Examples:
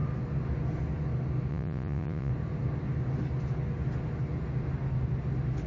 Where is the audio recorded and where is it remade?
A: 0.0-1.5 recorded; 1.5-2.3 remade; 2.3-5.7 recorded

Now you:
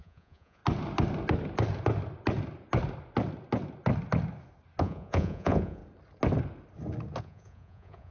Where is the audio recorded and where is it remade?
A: 0.0-0.6 remade; 0.6-4.8 recorded; 4.8-5.8 remade; 5.8-7.2 recorded; 7.2-8.1 remade

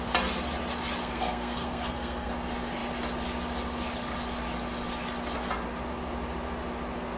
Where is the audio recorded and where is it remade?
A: 0.0-1.0 recorded; 1.0-2.3 remade; 2.3-7.2 recorded

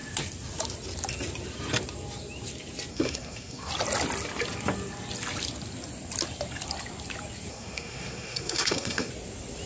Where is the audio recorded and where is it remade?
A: 0.0-2.9 recorded; 2.9-3.7 remade; 3.7-7.5 recorded; 7.5-9.1 remade; 9.1-9.7 recorded

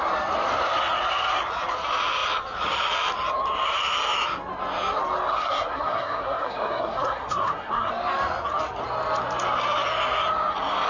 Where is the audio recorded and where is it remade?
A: 0.0-5.3 recorded; 5.3-7.9 remade; 7.9-10.9 recorded

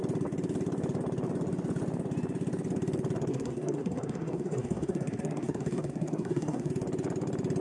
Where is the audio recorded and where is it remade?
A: 0.0-3.3 recorded; 3.3-6.7 remade; 6.7-7.6 recorded

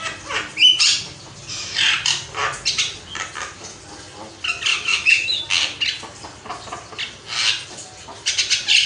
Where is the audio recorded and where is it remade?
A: 0.0-4.7 recorded; 4.7-5.4 remade; 5.4-8.9 recorded